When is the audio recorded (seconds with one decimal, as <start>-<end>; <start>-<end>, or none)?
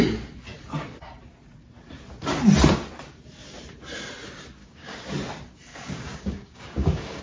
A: 0.0-4.6; 5.1-5.7